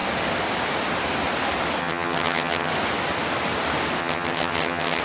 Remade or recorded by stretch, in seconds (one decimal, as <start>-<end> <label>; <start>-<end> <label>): 0.0-1.8 recorded; 1.8-2.7 remade; 2.7-4.0 recorded; 4.0-5.0 remade